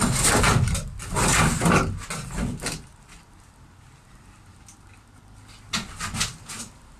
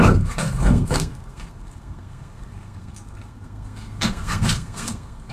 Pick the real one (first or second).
first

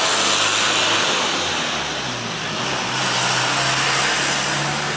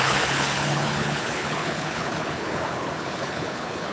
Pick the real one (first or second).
first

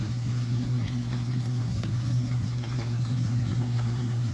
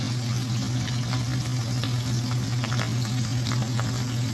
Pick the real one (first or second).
second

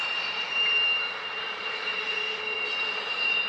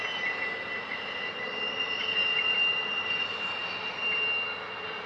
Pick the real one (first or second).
second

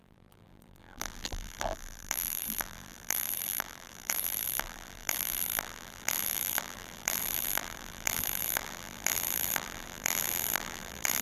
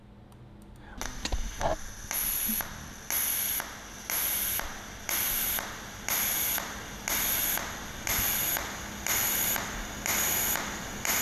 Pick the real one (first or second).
second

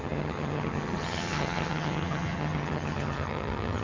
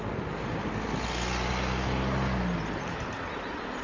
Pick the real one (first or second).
second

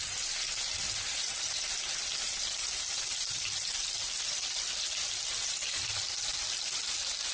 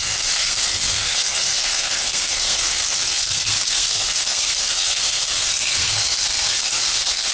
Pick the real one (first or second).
first